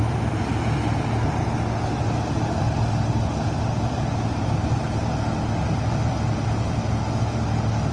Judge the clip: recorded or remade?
recorded